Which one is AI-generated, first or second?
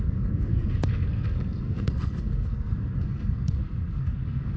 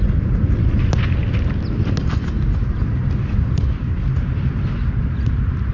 first